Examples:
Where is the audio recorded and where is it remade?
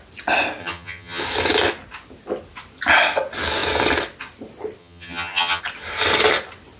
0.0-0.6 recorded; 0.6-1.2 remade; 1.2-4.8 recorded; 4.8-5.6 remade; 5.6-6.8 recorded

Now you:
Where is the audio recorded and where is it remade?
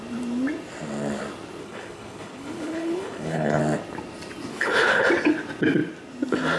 0.0-1.6 recorded; 1.6-3.6 remade; 3.6-4.5 recorded; 4.5-5.1 remade; 5.1-6.6 recorded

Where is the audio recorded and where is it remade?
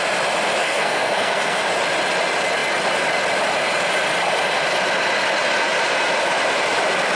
0.0-0.6 recorded; 0.6-1.6 remade; 1.6-7.2 recorded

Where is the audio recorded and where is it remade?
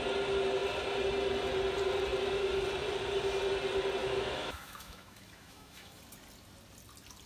0.0-4.0 recorded; 4.0-6.0 remade; 6.0-7.3 recorded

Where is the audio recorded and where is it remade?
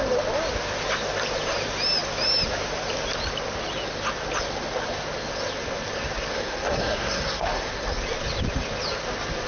0.0-6.3 recorded; 6.3-7.7 remade; 7.7-9.5 recorded